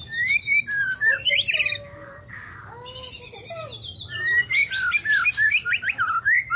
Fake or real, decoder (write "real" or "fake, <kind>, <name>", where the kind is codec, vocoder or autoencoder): real